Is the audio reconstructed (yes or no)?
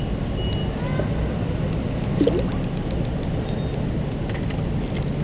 no